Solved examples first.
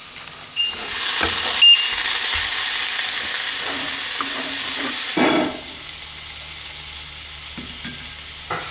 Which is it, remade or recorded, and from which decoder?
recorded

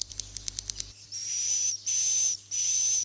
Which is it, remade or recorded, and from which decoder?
remade, vocoder, BigVGAN v2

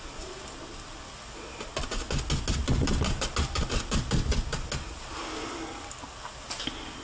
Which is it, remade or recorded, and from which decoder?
recorded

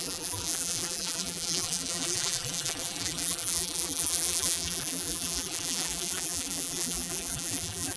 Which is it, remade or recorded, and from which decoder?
remade, vocoder, BigVGAN v2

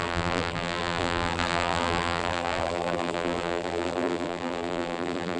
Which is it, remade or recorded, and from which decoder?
remade, vocoder, BigVGAN v2